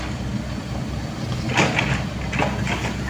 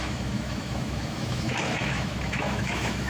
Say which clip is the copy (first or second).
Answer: second